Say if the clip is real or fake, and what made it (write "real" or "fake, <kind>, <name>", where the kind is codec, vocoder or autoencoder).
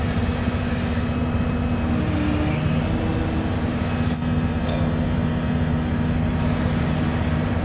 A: real